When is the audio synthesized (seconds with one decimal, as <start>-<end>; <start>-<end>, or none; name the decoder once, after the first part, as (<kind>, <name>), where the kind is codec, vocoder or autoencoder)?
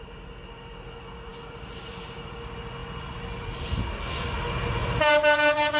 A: none